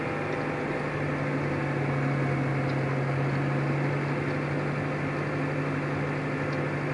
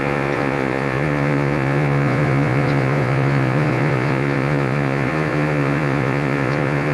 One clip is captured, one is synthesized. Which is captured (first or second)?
first